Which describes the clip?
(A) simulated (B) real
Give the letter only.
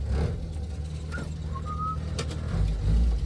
B